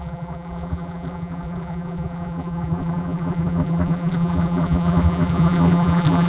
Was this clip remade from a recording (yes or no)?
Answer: yes